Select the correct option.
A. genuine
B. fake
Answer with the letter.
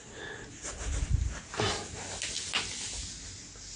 A